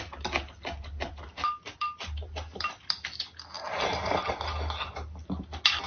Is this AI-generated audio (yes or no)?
no